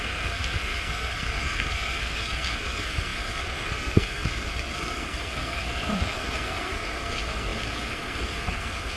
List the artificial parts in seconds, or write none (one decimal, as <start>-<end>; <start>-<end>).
0.0-9.0